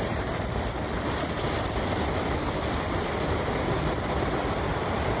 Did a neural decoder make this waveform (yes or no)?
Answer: yes